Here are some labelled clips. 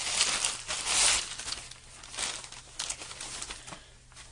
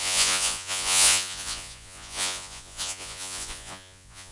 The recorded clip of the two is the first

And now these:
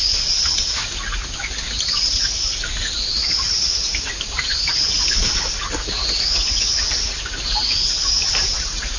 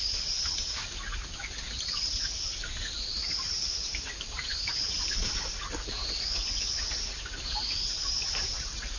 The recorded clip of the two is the first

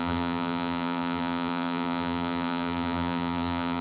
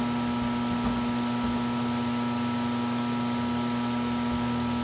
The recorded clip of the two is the second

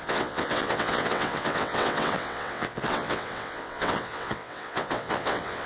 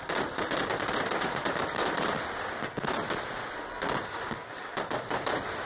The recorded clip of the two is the second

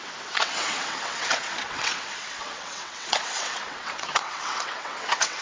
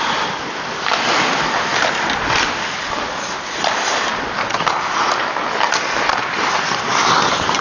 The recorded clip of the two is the second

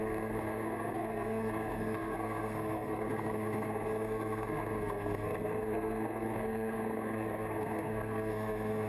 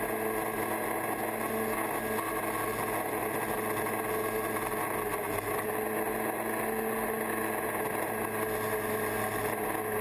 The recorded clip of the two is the second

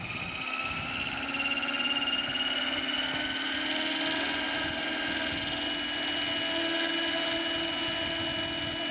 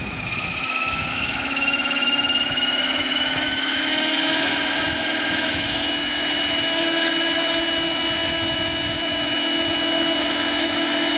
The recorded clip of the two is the first